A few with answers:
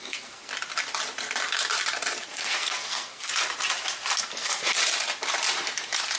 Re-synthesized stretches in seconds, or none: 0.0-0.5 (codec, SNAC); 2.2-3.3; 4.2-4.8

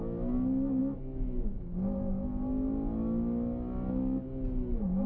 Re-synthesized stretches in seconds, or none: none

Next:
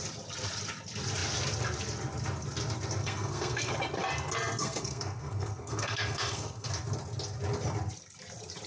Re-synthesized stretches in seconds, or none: 3.0-3.7 (codec, SNAC); 4.6-6.7

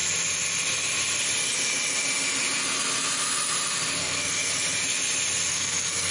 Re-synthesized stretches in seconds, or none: 4.0-4.5 (codec, SNAC); 5.5-6.1

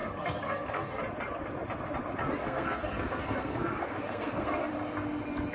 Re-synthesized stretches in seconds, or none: 0.0-1.0 (codec, SNAC); 2.4-4.7

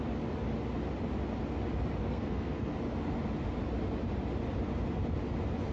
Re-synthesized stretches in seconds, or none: 2.0-2.7 (codec, SNAC)

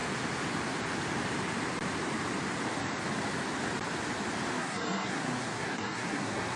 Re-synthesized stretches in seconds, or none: 4.5-6.6 (codec, SNAC)

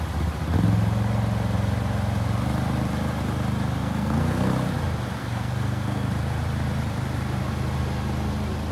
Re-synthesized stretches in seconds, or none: 3.8-4.5 (codec, SNAC); 5.2-6.1